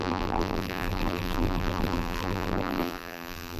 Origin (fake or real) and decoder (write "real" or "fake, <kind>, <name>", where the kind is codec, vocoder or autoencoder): fake, vocoder, BigVGAN v2